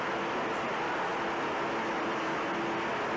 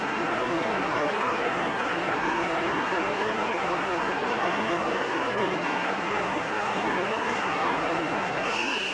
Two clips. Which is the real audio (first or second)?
first